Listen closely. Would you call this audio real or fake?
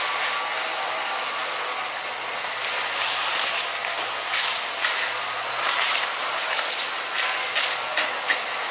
real